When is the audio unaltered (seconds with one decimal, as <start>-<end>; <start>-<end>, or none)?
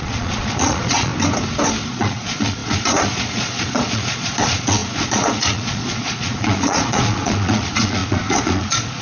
1.1-1.9